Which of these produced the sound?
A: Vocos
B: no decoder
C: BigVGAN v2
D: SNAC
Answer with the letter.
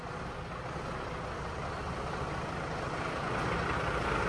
B